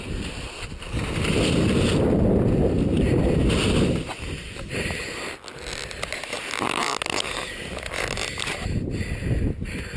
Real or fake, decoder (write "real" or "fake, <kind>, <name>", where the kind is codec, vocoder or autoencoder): real